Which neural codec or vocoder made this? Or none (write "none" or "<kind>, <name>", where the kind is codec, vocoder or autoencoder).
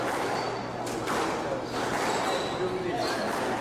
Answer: none